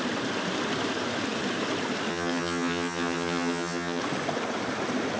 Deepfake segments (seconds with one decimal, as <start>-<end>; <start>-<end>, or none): 2.1-4.0